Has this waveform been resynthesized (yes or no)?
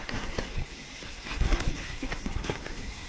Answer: yes